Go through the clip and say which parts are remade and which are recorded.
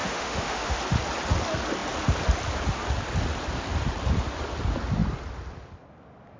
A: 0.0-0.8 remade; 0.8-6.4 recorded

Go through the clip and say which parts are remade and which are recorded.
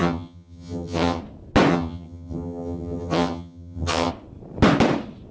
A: 0.0-1.2 remade; 1.2-1.7 recorded; 1.7-4.1 remade; 4.1-5.3 recorded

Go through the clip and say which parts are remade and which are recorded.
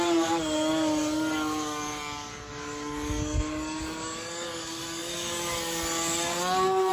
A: 0.0-6.9 remade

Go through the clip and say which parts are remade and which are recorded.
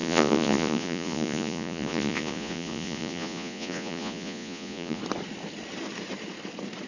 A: 0.0-5.0 remade; 5.0-6.9 recorded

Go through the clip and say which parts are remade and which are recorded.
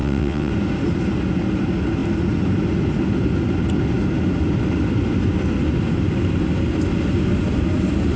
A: 0.0-0.5 remade; 0.5-8.2 recorded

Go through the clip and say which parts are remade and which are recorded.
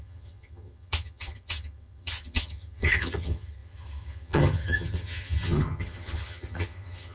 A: 0.0-7.1 remade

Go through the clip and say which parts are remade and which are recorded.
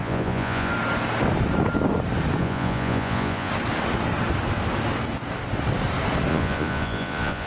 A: 0.0-0.7 remade; 0.7-2.4 recorded; 2.4-3.5 remade; 3.5-6.3 recorded; 6.3-7.5 remade